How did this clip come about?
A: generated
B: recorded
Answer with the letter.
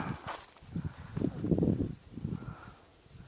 A